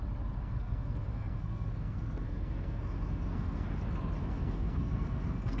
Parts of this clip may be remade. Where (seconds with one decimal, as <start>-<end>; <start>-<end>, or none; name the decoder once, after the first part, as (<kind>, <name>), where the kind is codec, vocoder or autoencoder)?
0.4-3.8 (codec, SNAC); 4.2-5.6